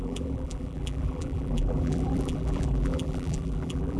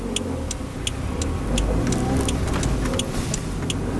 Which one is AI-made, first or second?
first